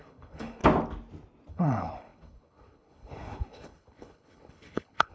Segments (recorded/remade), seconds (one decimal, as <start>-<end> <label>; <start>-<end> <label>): 0.0-0.6 remade; 0.6-1.5 recorded; 1.5-5.1 remade

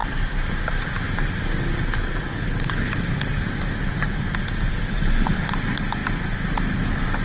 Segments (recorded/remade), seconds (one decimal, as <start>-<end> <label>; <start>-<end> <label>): 0.0-2.3 recorded; 2.3-2.9 remade; 2.9-4.7 recorded; 4.7-5.5 remade; 5.5-7.2 recorded

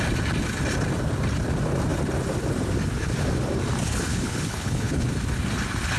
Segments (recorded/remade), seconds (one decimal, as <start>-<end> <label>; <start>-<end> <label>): 0.0-4.1 recorded; 4.1-5.1 remade; 5.1-6.0 recorded

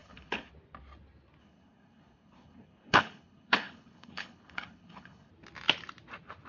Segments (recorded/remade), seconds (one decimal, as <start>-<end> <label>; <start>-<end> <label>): 0.0-0.5 remade; 0.5-1.4 recorded; 1.4-5.3 remade; 5.3-6.5 recorded

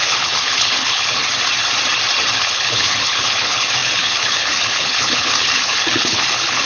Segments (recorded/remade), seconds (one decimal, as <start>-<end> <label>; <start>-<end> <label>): 0.0-1.2 remade; 1.2-2.3 recorded; 2.3-6.7 remade

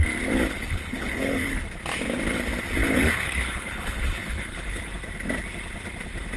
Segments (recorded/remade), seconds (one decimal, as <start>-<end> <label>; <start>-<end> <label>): 0.0-0.6 recorded; 0.6-1.6 remade; 1.6-2.8 recorded; 2.8-4.9 remade; 4.9-6.4 recorded

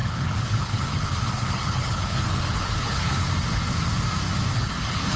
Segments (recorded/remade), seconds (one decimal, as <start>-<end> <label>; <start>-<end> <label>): 0.0-3.2 remade; 3.2-4.5 recorded; 4.5-5.2 remade

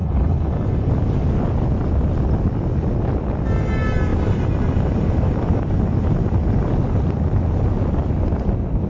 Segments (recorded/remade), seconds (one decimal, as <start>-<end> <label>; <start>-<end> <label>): 0.0-0.9 remade; 0.9-8.9 recorded